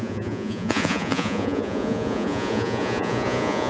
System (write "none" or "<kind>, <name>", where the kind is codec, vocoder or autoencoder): vocoder, Vocos